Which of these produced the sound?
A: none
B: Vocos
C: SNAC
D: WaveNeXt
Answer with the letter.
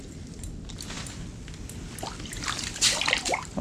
A